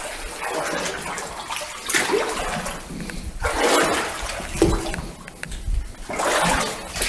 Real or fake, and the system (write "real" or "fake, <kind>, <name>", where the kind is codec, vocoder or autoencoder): real